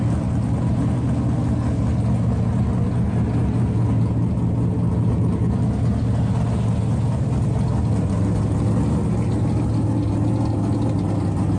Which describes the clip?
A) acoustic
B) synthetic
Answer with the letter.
A